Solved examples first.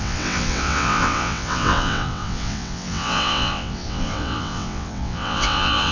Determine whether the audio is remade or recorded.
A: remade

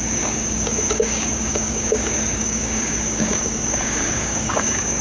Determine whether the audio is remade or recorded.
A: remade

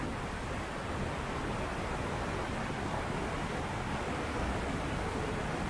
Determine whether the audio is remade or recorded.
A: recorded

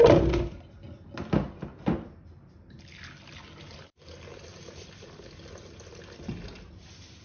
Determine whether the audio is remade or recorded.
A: recorded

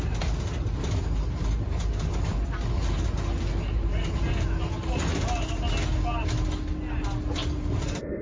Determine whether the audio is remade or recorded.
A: recorded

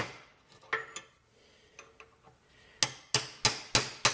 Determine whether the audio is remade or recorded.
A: recorded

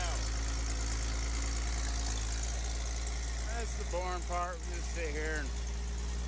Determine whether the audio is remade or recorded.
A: recorded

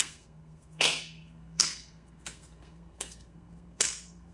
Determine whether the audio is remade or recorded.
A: remade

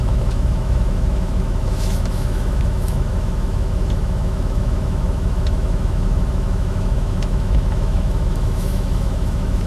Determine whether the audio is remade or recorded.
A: remade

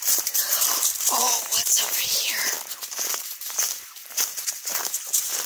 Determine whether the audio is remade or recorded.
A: remade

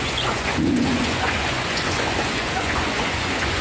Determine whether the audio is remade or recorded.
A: remade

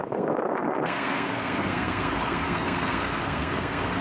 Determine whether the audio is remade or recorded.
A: remade